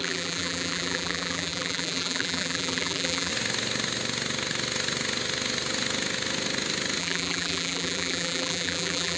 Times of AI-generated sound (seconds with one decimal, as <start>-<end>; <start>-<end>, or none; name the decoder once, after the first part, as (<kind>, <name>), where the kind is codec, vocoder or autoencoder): 0.0-3.3 (vocoder, BigVGAN v2); 7.0-9.2